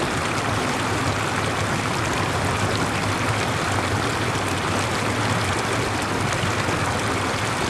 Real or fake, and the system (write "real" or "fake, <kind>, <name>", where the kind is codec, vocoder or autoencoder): real